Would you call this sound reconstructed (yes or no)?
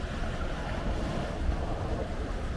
no